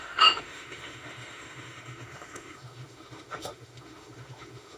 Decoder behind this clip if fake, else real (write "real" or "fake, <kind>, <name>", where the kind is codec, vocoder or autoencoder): fake, autoencoder, DAC-VAE